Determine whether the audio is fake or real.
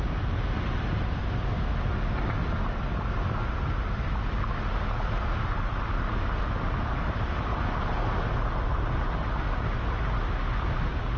real